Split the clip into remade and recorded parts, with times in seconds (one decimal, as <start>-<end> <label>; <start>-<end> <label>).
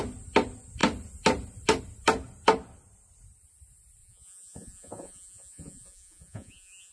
0.0-4.0 recorded; 4.0-6.9 remade